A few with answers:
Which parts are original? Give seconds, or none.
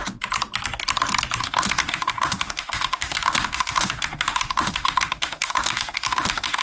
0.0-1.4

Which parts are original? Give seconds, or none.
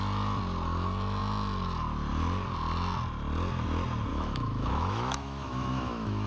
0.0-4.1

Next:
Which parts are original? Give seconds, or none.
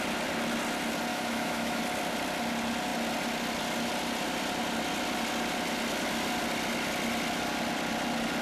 0.0-1.1; 1.8-8.4